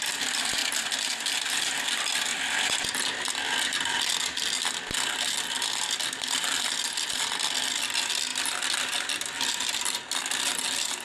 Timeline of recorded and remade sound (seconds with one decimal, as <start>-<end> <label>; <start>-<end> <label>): 0.0-0.6 remade; 0.6-1.4 recorded; 1.4-2.3 remade; 2.3-5.1 recorded; 5.1-11.0 remade